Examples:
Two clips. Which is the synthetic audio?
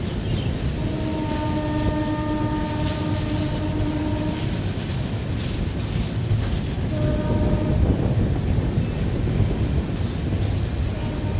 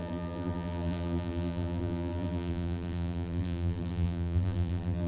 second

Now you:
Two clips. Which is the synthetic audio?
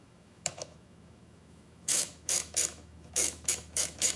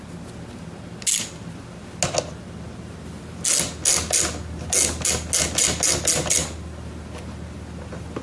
first